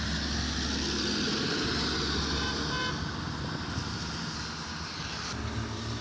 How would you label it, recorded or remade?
recorded